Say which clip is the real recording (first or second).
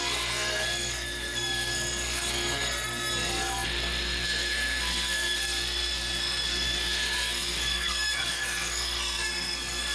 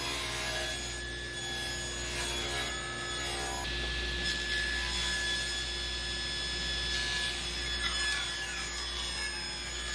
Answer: second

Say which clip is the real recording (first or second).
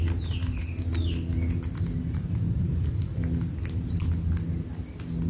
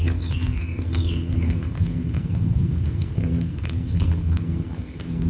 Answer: first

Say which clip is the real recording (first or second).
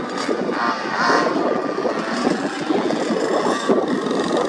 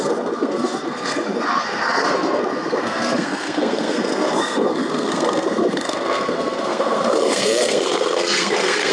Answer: first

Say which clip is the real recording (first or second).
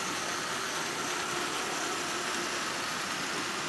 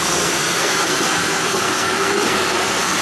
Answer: first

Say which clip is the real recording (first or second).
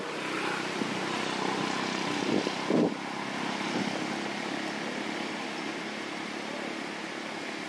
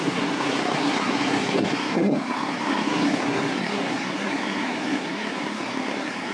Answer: first